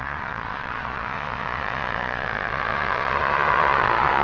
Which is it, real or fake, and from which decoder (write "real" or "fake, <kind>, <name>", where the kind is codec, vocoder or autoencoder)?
fake, vocoder, Vocos